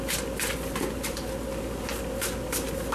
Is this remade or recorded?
recorded